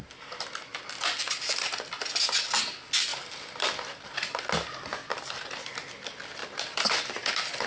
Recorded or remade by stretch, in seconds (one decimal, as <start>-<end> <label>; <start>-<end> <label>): 0.0-3.1 recorded; 3.1-3.7 remade; 3.7-6.4 recorded; 6.4-7.3 remade; 7.3-7.7 recorded